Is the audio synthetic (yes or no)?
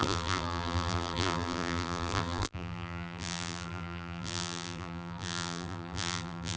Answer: yes